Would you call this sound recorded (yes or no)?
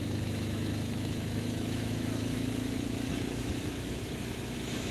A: no